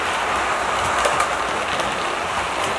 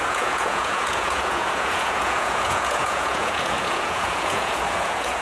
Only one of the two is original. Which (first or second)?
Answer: first